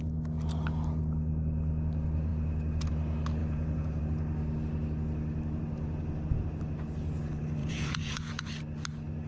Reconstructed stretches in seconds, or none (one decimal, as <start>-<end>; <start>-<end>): 3.4-4.0; 7.6-8.5